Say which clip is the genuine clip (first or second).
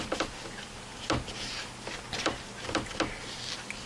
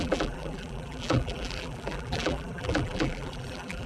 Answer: first